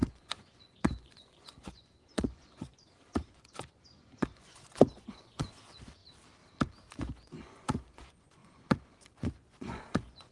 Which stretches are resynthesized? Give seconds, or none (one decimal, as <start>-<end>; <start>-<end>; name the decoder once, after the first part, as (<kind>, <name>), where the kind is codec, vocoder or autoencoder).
0.0-6.0 (vocoder, Vocos); 7.0-10.3